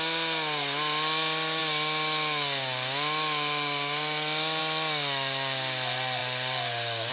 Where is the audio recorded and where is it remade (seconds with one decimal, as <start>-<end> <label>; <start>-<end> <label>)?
0.0-7.1 recorded